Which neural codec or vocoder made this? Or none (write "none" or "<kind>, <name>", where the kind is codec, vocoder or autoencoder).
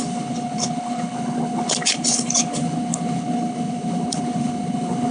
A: codec, HILCodec